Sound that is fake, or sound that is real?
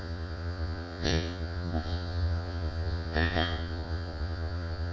fake